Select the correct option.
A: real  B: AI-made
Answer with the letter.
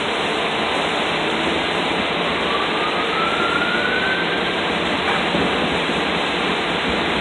A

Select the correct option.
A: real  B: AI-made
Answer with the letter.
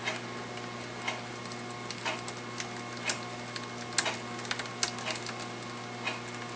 A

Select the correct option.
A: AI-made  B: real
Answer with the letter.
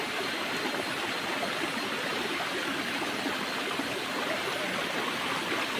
B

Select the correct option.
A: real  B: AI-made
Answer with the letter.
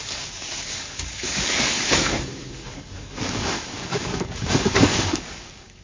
B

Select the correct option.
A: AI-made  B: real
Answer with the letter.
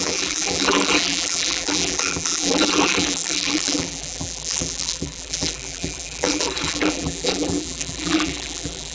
A